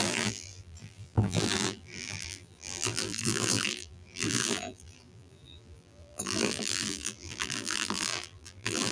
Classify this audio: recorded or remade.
remade